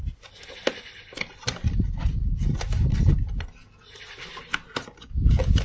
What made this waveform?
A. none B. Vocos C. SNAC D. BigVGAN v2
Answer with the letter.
A